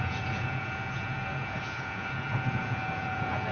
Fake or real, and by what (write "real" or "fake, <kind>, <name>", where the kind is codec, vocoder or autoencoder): fake, vocoder, Vocos